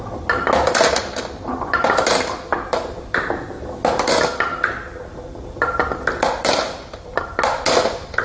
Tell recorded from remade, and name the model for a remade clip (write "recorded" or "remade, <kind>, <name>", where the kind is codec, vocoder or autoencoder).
recorded